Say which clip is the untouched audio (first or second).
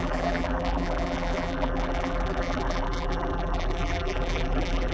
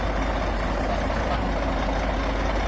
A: second